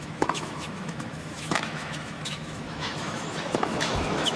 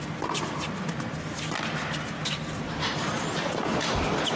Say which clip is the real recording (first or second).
second